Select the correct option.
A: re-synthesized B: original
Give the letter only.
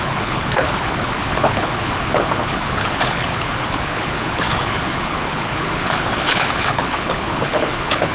A